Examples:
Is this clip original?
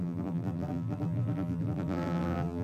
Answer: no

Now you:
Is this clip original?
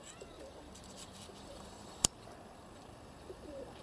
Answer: no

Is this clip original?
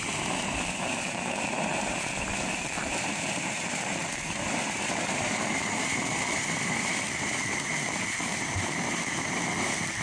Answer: no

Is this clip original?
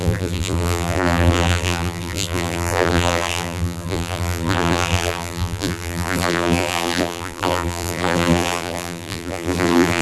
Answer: no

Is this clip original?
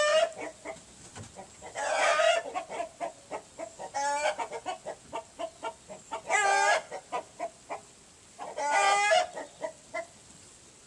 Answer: yes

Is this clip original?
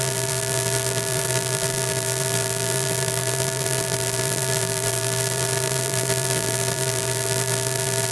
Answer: no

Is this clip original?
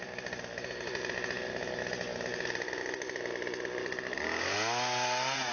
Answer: yes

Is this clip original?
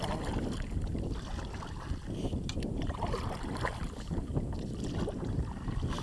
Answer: yes